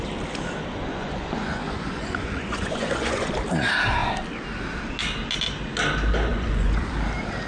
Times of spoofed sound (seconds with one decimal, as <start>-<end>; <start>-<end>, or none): 0.9-3.3; 6.3-6.9